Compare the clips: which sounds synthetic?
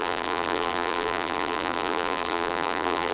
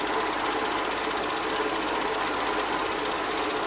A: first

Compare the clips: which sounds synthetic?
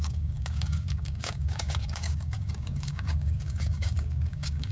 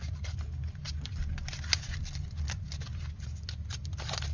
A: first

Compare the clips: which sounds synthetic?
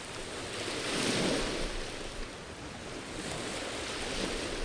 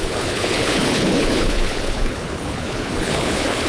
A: second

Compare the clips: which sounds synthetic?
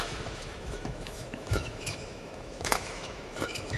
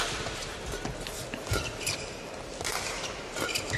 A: first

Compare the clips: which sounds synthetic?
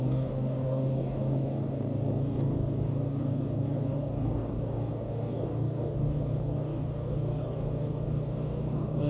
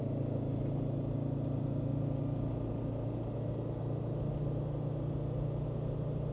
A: first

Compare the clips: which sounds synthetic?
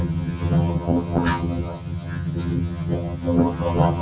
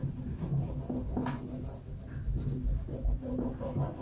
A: first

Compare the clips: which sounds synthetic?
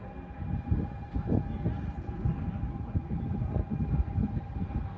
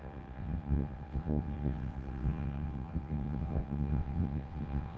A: second